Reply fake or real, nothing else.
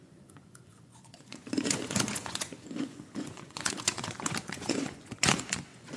fake